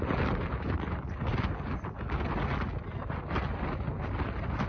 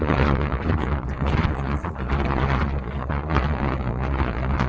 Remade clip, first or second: second